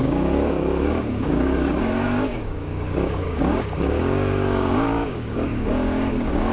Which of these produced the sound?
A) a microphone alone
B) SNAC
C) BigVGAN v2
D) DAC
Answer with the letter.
D